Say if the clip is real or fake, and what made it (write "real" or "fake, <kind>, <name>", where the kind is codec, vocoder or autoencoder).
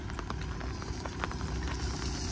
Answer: real